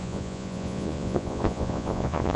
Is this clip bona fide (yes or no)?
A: no